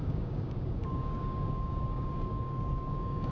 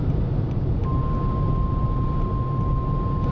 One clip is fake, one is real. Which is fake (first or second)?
first